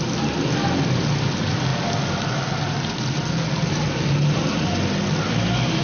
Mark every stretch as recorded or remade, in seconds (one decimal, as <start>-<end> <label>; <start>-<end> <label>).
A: 0.0-5.8 recorded